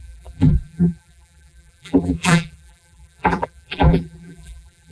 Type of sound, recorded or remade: remade